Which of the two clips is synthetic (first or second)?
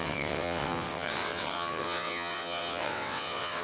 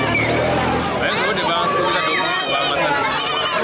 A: first